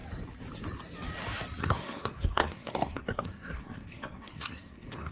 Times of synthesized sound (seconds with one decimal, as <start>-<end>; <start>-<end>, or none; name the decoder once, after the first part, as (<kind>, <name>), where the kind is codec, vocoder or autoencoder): 1.6-5.1 (codec, SNAC)